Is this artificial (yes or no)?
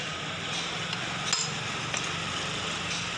no